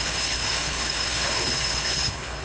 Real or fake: fake